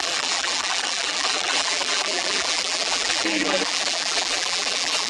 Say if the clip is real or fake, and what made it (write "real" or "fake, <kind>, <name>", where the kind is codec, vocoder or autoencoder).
fake, vocoder, BigVGAN v2